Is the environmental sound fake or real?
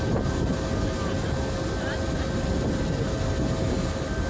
real